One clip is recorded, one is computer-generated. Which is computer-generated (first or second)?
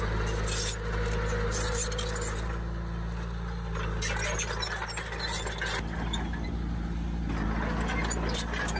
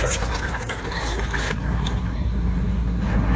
second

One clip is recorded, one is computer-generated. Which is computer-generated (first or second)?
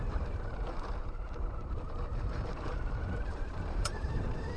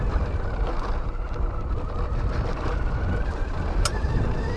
first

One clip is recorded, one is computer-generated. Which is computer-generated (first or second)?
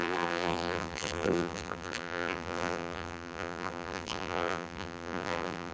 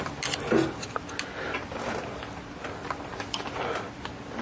first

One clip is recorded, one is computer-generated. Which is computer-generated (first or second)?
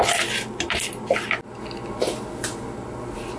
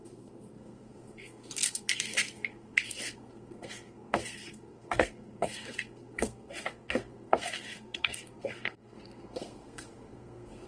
second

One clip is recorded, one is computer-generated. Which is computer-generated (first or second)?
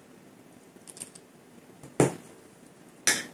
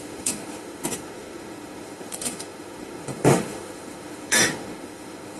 second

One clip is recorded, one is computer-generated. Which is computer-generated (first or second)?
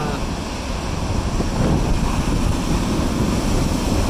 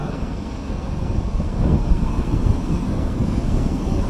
second